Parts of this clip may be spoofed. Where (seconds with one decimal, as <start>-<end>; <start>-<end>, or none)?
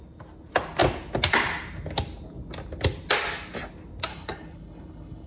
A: 4.1-5.3